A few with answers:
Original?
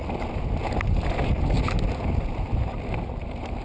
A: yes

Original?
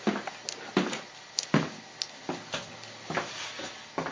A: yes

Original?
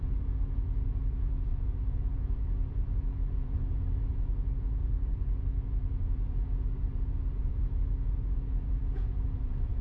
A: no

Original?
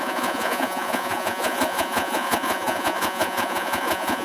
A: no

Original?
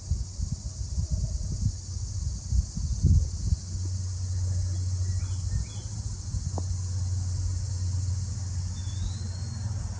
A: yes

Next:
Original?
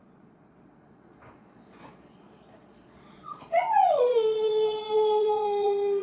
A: no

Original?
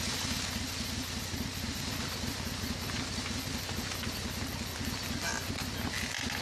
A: yes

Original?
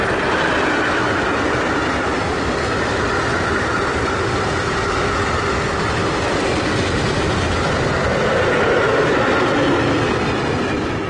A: yes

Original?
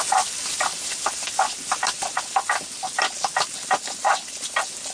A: yes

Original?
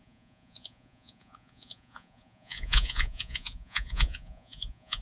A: no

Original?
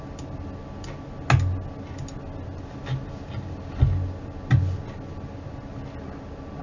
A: yes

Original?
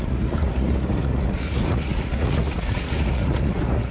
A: no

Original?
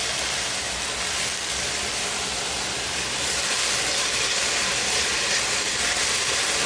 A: yes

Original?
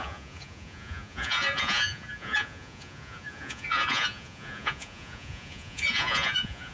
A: no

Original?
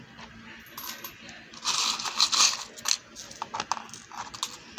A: yes